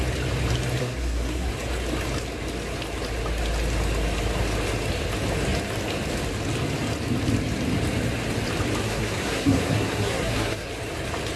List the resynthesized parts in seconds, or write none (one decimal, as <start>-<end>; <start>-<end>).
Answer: 0.8-1.5; 8.8-10.7